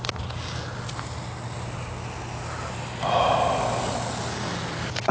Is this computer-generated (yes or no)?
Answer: no